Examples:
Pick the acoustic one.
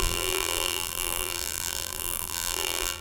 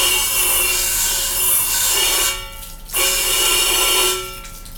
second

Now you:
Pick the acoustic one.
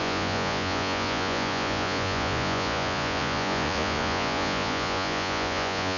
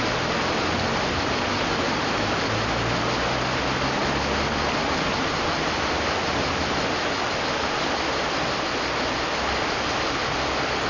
second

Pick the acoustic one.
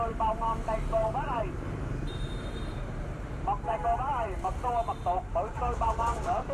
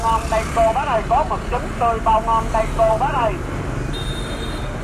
second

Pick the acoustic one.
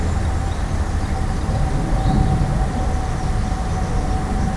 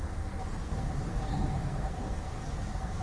first